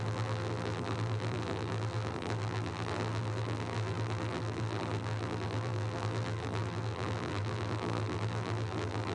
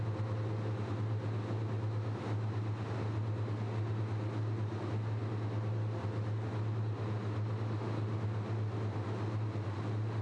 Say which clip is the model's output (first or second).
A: first